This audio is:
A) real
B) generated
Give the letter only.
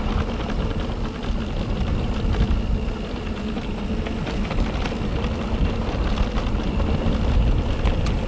A